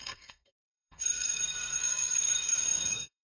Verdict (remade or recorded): remade